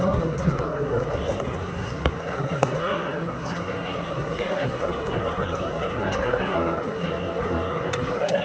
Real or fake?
fake